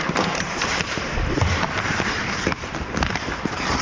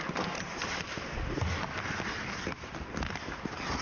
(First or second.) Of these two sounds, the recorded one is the second